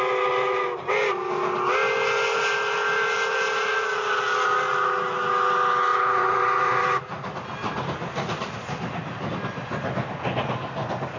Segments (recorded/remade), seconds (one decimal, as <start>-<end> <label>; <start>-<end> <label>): 0.0-5.9 recorded; 5.9-9.3 remade; 9.3-11.2 recorded